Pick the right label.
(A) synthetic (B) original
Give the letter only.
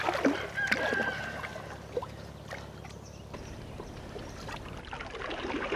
B